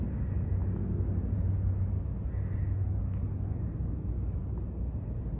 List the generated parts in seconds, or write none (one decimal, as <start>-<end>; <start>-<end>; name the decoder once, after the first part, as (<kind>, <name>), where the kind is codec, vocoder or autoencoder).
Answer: none